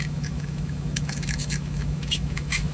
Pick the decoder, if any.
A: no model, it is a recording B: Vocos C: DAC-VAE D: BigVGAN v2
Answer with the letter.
C